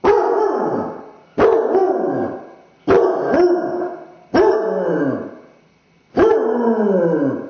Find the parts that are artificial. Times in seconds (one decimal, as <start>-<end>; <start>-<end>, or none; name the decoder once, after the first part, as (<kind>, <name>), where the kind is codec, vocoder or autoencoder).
none